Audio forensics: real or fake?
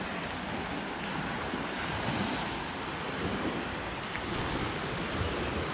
real